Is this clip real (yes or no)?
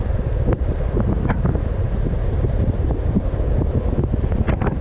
yes